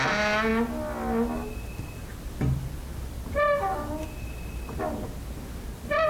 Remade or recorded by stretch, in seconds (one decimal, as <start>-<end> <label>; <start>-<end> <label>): 0.0-6.1 recorded